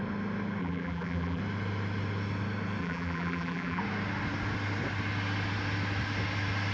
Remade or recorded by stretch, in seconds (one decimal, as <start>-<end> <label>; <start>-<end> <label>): 0.0-0.6 recorded; 0.6-1.4 remade; 1.4-2.8 recorded; 2.8-3.8 remade; 3.8-6.7 recorded